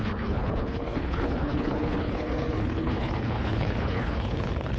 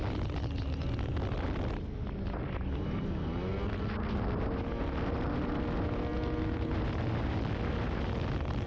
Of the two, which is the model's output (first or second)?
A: first